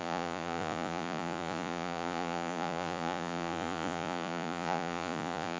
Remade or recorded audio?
remade